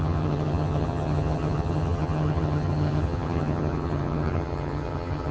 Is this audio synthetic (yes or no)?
yes